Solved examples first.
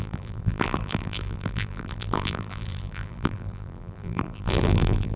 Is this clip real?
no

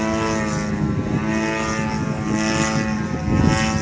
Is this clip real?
yes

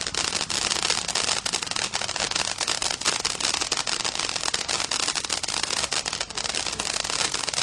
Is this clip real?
yes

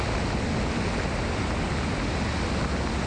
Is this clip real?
yes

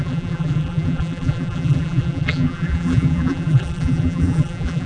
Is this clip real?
no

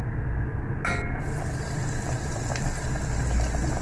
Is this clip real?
yes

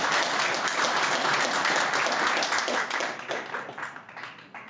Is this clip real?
yes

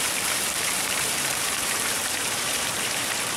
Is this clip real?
no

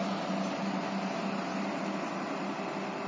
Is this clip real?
yes